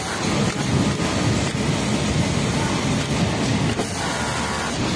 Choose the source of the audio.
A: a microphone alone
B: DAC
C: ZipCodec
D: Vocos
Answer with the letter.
A